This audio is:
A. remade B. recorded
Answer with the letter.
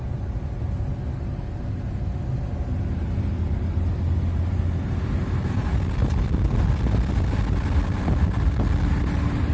B